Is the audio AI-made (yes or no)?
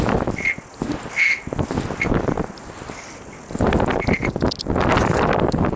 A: no